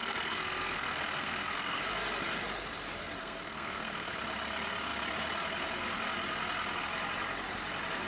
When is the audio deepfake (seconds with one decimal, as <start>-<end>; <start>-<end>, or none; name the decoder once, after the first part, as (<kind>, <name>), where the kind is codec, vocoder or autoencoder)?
0.0-1.8 (codec, SNAC); 3.2-4.1